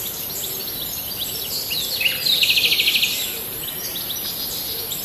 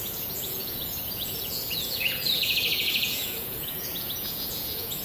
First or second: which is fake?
second